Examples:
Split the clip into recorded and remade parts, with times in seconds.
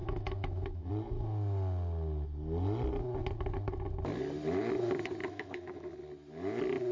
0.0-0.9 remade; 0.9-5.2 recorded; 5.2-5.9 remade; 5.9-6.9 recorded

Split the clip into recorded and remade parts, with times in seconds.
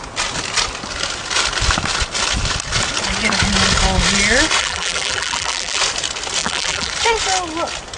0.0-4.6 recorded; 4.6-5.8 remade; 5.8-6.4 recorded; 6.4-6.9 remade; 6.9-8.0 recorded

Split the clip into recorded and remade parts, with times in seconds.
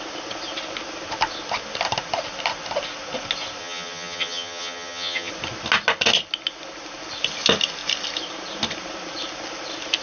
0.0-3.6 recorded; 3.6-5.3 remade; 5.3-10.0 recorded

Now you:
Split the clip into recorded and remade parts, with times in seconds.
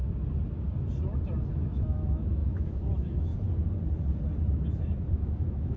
0.0-1.5 recorded; 1.5-3.3 remade; 3.3-5.1 recorded; 5.1-5.8 remade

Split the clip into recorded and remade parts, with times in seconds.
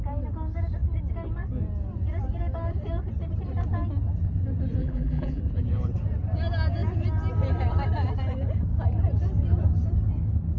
0.0-4.8 recorded; 4.8-5.4 remade; 5.4-10.6 recorded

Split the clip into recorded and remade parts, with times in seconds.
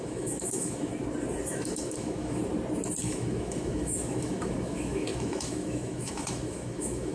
0.0-0.9 remade; 0.9-1.5 recorded; 1.5-2.4 remade; 2.4-3.0 recorded; 3.0-7.1 remade